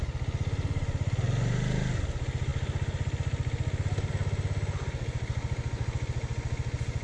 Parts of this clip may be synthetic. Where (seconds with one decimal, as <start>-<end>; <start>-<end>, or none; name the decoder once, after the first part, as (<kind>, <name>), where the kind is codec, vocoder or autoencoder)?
none